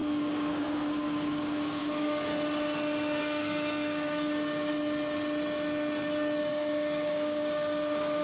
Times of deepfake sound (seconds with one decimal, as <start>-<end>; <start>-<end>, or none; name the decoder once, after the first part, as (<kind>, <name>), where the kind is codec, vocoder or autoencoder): 0.0-2.3 (codec, DAC); 3.2-4.7; 6.4-8.2